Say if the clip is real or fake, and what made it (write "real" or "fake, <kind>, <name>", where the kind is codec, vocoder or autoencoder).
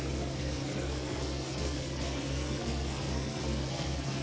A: fake, codec, SNAC